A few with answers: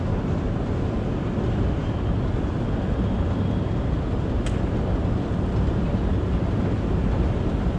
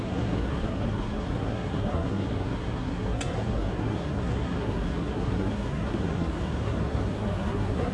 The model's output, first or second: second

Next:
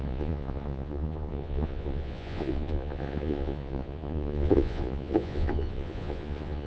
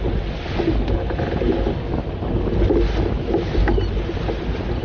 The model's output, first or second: first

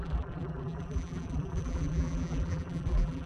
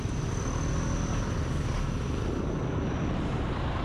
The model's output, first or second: first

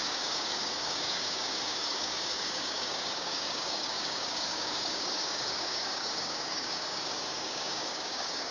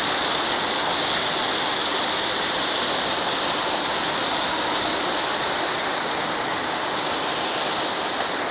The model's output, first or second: first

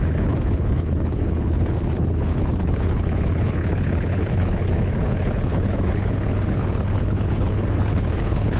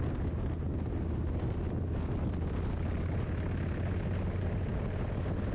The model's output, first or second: first